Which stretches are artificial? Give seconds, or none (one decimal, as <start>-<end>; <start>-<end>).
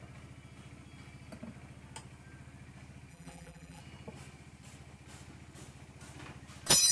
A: 3.1-3.8